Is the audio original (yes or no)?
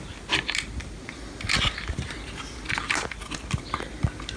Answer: yes